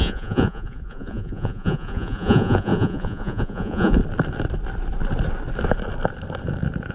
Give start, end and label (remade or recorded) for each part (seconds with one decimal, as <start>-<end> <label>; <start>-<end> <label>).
0.0-4.0 remade; 4.0-6.9 recorded